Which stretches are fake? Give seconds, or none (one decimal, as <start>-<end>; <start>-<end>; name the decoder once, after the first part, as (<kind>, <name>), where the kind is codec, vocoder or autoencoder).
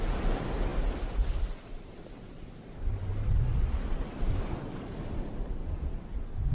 none